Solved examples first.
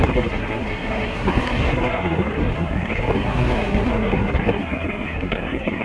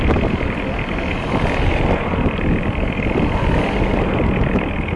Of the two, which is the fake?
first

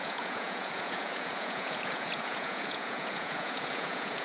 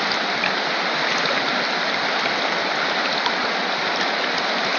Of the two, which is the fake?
first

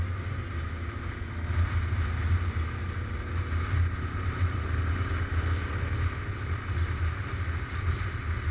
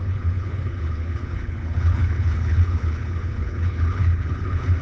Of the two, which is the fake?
second